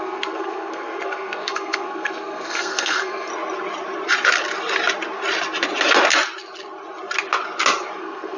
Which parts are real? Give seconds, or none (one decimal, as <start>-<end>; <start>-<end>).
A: 3.3-8.0